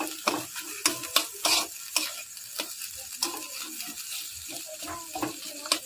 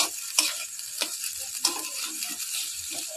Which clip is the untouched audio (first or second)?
first